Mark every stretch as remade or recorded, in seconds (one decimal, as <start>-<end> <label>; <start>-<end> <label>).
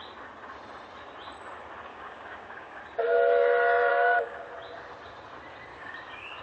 0.0-1.9 recorded; 1.9-2.8 remade; 2.8-3.9 recorded; 3.9-4.5 remade; 4.5-5.7 recorded; 5.7-6.4 remade